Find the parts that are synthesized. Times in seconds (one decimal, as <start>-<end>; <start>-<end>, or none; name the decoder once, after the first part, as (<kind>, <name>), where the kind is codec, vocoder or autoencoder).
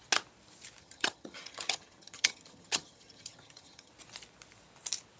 0.8-3.9 (vocoder, HiFi-GAN)